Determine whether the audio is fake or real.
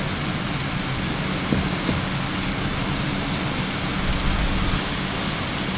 real